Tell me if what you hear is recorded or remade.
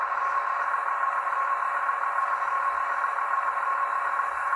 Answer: recorded